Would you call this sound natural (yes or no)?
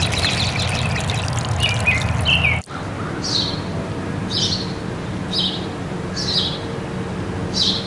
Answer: yes